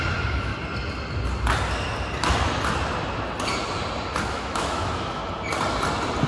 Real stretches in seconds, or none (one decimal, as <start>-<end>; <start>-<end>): 0.5-4.3; 5.2-6.3